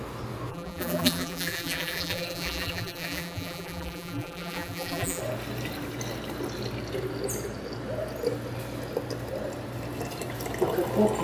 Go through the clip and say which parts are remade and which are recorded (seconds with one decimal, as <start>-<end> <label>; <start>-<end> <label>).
0.0-0.5 recorded; 0.5-5.2 remade; 5.2-11.2 recorded